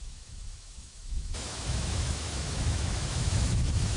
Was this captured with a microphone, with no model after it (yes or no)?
no